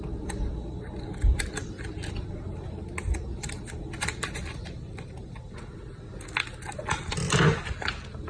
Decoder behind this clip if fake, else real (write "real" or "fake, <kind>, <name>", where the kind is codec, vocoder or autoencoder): real